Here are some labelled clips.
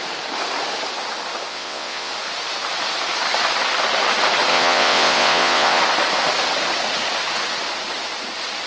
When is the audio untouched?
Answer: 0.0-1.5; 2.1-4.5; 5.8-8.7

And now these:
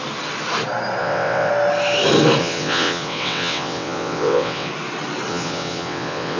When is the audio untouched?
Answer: 0.0-1.0; 1.5-2.4; 4.7-5.3

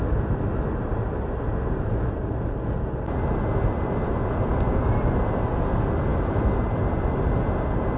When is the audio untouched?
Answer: 0.0-8.0

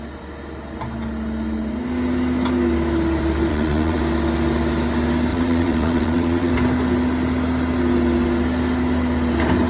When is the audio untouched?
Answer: 0.0-3.5; 4.0-5.3; 6.5-9.7